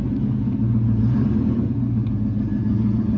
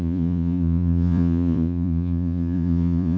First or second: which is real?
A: first